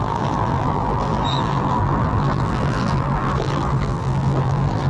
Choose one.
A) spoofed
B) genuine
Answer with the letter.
A